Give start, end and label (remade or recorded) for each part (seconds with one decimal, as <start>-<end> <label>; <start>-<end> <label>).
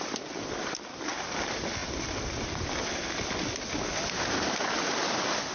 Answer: 0.0-5.5 recorded